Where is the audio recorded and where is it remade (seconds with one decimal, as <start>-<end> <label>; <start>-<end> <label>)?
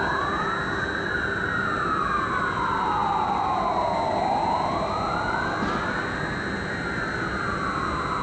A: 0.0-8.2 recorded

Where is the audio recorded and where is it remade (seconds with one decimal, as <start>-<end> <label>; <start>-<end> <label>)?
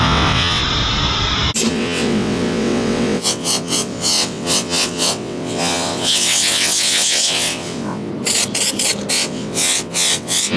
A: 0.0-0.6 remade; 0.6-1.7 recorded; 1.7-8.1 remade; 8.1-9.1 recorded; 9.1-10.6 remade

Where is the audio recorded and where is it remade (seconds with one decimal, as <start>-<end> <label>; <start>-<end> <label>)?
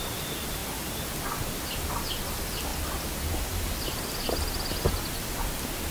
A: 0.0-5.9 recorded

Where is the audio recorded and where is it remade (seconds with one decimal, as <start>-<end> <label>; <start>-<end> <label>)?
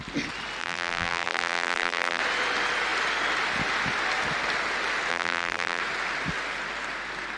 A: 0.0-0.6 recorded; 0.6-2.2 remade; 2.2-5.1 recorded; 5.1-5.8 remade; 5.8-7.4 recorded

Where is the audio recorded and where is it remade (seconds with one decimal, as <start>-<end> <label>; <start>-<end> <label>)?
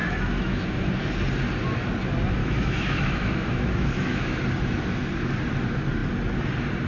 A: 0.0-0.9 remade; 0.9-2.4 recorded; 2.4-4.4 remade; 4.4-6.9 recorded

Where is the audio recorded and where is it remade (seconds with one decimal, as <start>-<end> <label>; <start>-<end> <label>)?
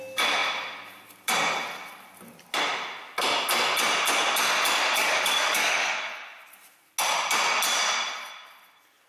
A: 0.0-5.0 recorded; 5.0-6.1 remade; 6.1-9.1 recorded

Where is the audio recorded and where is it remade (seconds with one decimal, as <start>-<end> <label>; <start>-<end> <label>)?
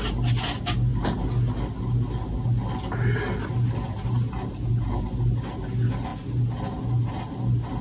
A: 0.0-7.8 recorded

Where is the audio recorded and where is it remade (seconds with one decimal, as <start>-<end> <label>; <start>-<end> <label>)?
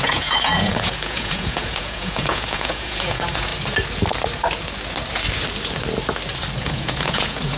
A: 0.0-3.5 remade; 3.5-6.6 recorded; 6.6-7.6 remade